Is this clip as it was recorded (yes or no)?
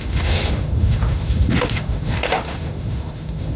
no